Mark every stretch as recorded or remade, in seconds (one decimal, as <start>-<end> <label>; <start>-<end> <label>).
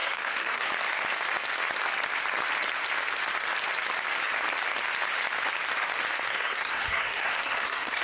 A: 0.0-0.7 remade; 0.7-6.3 recorded; 6.3-8.0 remade